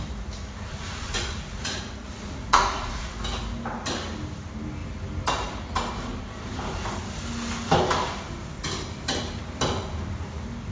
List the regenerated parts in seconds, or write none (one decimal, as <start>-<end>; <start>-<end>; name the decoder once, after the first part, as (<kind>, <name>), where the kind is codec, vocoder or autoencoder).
0.7-3.1 (vocoder, Vocos)